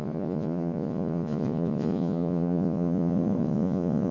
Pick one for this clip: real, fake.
fake